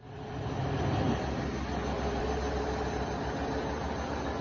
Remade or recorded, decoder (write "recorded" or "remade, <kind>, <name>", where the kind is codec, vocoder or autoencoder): recorded